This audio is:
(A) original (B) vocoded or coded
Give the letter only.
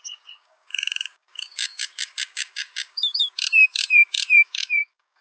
B